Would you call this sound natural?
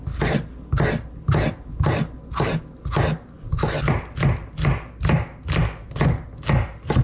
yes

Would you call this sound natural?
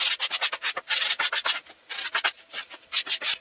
yes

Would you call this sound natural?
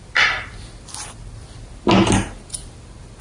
yes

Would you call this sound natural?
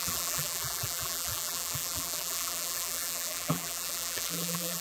no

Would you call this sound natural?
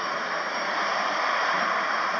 no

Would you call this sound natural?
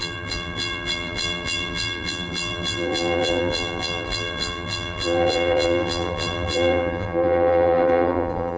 no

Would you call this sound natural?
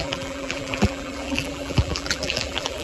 no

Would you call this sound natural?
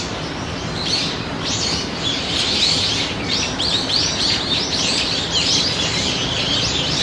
no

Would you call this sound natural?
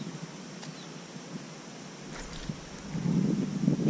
yes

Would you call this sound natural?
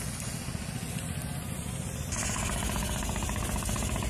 yes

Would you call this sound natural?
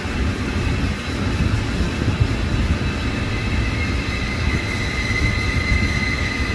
yes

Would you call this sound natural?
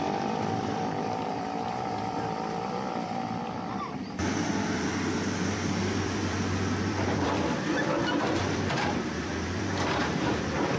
no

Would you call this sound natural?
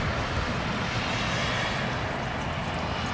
yes